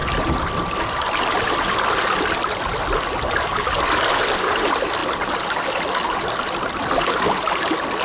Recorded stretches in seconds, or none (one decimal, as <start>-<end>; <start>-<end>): 0.0-8.0